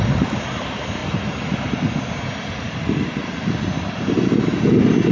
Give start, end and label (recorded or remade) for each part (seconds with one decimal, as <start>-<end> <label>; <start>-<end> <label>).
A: 0.0-5.1 recorded